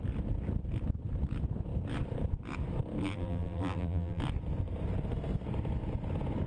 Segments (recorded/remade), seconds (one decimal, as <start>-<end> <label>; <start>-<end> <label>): 0.0-3.0 recorded; 3.0-4.2 remade; 4.2-6.5 recorded